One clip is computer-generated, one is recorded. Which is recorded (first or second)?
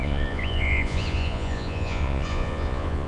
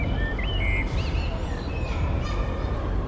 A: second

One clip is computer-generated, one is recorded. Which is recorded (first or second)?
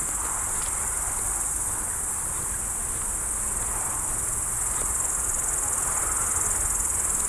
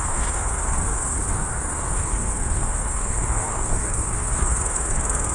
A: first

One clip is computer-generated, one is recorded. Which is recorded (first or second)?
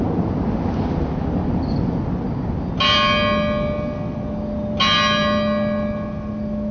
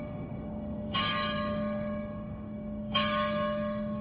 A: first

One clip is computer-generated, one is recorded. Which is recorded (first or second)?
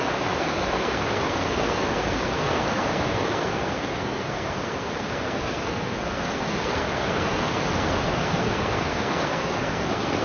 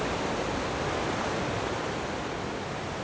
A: second